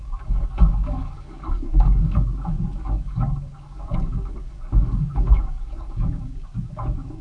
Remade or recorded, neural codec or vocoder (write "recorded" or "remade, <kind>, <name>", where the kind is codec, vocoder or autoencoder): remade, codec, DAC